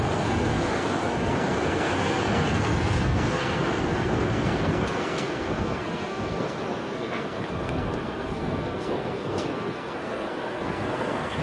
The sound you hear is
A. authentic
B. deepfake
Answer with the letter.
B